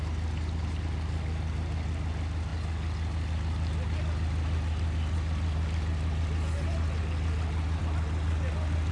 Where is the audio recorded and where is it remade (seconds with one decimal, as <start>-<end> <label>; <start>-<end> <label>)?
0.0-8.9 recorded